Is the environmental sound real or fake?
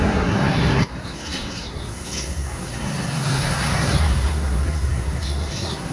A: fake